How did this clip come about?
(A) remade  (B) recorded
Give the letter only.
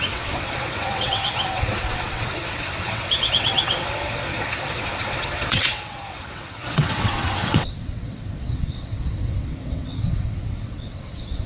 A